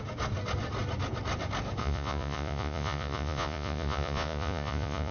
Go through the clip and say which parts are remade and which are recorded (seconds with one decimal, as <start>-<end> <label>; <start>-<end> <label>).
0.0-1.8 recorded; 1.8-5.1 remade